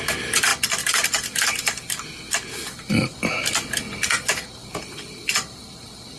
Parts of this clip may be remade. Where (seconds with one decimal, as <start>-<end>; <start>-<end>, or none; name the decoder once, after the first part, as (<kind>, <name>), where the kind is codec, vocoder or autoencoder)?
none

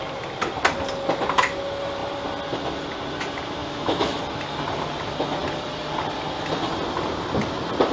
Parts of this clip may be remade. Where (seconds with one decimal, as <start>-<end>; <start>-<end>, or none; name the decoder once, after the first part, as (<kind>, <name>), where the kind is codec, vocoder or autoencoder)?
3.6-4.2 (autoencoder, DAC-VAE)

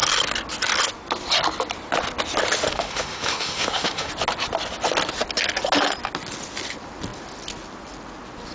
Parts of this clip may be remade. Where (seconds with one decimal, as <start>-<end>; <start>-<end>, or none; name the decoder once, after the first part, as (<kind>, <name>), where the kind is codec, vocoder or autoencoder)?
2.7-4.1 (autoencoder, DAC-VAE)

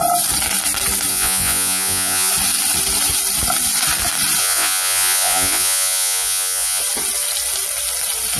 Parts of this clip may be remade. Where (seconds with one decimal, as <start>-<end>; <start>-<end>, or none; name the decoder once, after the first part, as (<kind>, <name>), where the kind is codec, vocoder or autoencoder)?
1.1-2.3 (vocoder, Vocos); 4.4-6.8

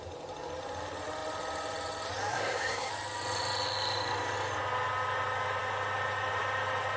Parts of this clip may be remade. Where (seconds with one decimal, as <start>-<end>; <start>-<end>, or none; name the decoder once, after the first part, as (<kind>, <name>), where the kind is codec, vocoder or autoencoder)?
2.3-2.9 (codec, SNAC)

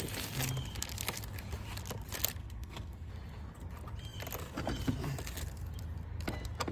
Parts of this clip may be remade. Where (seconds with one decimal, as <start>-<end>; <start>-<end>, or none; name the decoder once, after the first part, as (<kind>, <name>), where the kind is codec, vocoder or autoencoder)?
2.4-3.1 (codec, SNAC)